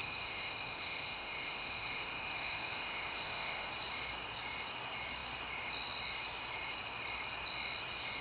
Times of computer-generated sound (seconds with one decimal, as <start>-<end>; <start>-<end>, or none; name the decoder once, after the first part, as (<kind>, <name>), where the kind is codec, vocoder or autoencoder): 0.0-3.7 (autoencoder, DAC-VAE)